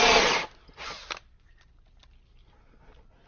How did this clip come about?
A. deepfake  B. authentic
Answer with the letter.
B